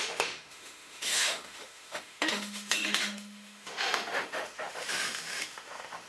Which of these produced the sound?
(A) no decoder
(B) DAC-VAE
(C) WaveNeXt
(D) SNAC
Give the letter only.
B